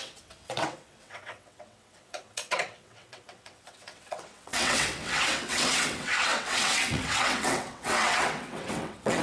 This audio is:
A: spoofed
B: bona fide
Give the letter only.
A